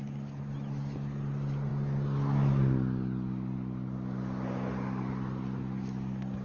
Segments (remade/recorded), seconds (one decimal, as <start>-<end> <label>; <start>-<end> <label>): 0.0-6.4 recorded